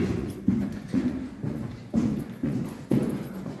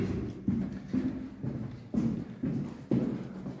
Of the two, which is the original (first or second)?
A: second